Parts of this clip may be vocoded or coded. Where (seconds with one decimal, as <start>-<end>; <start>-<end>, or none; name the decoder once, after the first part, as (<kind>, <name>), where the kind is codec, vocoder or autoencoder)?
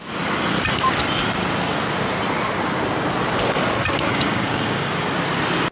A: 4.1-4.9 (codec, DAC)